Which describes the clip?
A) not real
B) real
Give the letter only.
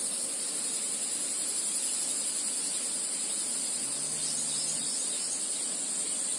B